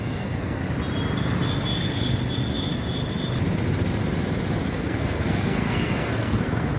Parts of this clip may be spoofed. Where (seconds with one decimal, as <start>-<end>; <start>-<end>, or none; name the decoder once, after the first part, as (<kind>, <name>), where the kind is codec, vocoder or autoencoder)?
0.0-0.6 (codec, SNAC); 4.7-6.8